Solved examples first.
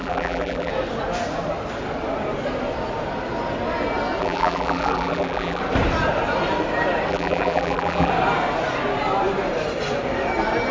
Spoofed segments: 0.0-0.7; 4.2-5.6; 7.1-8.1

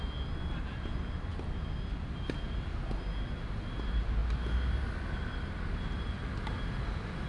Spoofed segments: none